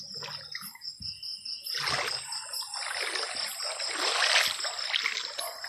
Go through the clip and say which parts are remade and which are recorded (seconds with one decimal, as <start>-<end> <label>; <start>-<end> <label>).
0.0-5.7 recorded